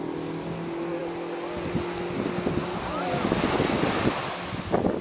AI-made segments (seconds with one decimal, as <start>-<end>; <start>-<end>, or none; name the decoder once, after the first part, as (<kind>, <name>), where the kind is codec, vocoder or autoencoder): none